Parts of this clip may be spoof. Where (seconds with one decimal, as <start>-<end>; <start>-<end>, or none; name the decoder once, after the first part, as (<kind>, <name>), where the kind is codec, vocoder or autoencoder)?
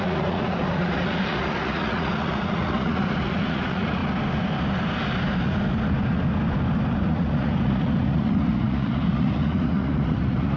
0.0-4.0 (vocoder, Vocos); 7.0-10.6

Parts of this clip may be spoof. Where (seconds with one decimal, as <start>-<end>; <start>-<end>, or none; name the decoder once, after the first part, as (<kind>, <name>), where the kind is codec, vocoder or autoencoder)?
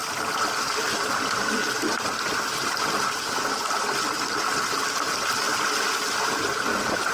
none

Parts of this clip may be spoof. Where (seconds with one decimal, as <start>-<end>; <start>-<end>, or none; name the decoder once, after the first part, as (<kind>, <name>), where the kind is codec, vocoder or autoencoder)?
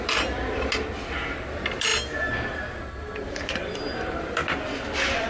none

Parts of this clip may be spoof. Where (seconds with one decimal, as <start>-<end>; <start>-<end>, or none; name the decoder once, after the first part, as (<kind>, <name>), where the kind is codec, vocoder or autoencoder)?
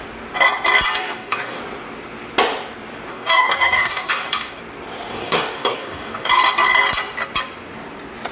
1.0-1.6 (codec, DAC); 3.1-4.6; 5.1-6.3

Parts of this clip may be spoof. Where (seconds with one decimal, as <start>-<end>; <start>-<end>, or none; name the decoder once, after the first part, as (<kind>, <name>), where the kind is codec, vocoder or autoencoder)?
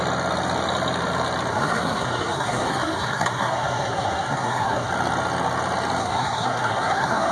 1.5-4.9 (codec, SNAC); 6.0-7.3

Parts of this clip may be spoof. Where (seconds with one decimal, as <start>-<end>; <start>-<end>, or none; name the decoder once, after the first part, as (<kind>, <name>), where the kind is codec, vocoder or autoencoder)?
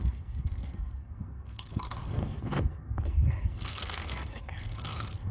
0.0-5.3 (codec, SNAC)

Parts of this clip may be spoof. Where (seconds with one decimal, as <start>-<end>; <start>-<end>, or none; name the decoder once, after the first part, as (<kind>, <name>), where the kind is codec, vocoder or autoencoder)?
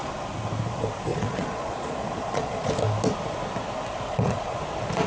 1.1-2.7 (vocoder, Vocos); 4.1-4.6